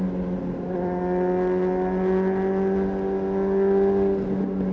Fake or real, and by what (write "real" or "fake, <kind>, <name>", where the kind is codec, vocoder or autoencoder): real